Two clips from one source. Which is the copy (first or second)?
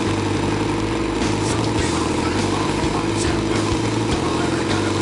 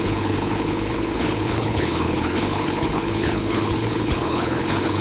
second